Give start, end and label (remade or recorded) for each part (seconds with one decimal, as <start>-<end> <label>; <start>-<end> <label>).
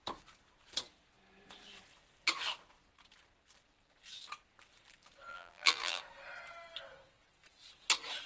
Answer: 0.0-5.3 recorded; 5.3-6.0 remade; 6.0-8.3 recorded